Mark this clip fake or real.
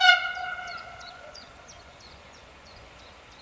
fake